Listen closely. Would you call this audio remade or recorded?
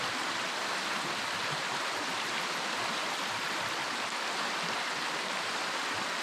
recorded